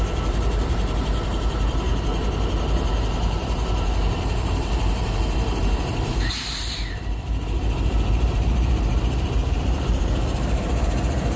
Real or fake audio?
fake